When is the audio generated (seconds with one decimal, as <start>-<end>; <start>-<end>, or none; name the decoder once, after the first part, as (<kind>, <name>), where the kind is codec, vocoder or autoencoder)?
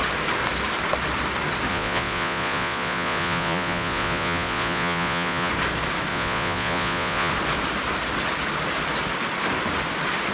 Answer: 1.7-5.5 (vocoder, Vocos); 6.1-7.3